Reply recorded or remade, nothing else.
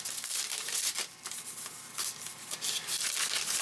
recorded